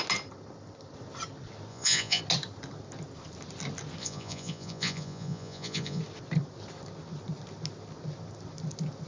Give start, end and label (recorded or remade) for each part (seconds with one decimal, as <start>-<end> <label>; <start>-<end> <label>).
0.0-1.7 recorded; 1.7-2.2 remade; 2.2-4.0 recorded; 4.0-6.0 remade; 6.0-9.1 recorded